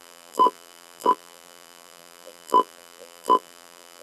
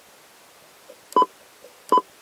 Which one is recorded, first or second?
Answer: second